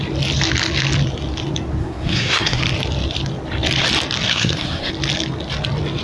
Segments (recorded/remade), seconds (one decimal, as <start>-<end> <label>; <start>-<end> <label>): 0.0-1.8 recorded; 1.8-2.6 remade; 2.6-4.3 recorded; 4.3-4.9 remade; 4.9-6.0 recorded